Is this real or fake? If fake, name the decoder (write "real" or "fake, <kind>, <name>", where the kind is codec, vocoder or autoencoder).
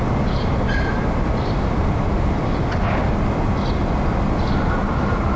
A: real